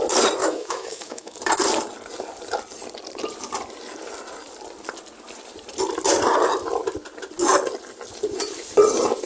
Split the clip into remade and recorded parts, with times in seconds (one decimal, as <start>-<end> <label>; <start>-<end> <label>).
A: 0.0-0.4 recorded; 0.4-1.4 remade; 1.4-9.3 recorded